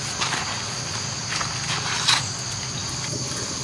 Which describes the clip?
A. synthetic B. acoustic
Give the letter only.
B